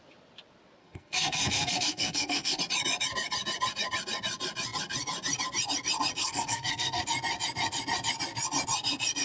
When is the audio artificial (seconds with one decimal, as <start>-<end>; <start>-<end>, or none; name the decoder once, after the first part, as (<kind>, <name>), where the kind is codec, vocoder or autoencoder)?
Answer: 0.8-2.6 (codec, SNAC); 6.2-7.0